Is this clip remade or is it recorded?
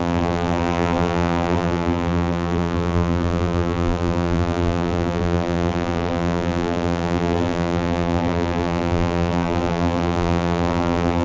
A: remade